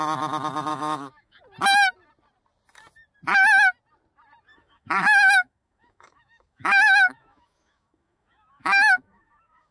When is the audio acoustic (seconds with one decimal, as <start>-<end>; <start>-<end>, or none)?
0.0-0.7; 1.4-4.5